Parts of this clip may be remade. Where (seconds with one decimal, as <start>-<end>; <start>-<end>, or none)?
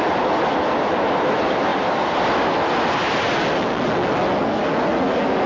none